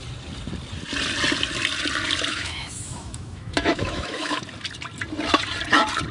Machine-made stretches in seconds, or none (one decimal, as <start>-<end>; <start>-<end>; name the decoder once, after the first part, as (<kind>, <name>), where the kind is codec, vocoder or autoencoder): 2.3-4.4 (autoencoder, DAC-VAE)